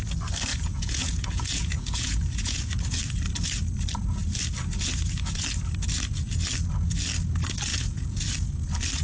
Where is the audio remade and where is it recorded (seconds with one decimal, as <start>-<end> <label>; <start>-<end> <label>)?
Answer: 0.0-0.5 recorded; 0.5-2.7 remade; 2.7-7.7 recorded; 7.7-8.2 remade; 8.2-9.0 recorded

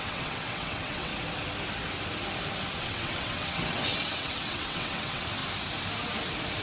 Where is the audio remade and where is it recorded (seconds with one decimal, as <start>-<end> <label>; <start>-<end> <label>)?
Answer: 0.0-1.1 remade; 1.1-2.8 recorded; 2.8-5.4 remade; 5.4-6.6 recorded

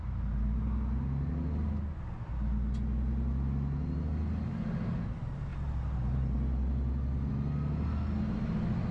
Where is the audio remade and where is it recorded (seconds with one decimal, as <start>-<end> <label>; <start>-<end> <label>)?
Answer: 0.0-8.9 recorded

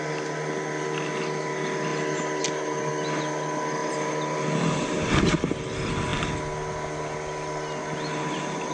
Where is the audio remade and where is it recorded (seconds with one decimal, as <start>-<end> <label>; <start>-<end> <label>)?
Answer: 0.0-8.7 recorded

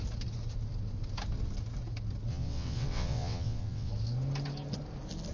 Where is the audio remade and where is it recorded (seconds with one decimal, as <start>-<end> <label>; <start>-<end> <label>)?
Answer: 0.0-2.3 recorded; 2.3-3.9 remade; 3.9-5.3 recorded

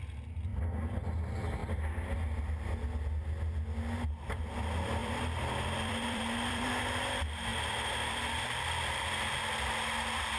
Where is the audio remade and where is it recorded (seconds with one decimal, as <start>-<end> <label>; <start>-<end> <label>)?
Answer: 0.0-5.0 recorded; 5.0-6.7 remade; 6.7-7.5 recorded; 7.5-8.6 remade; 8.6-10.4 recorded

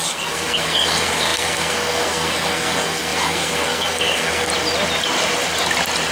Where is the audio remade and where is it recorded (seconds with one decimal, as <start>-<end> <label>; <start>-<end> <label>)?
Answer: 0.0-4.5 remade; 4.5-6.1 recorded

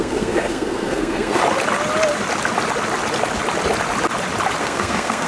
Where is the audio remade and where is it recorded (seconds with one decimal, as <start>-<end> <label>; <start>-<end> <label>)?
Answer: 0.0-1.4 remade; 1.4-4.6 recorded; 4.6-5.3 remade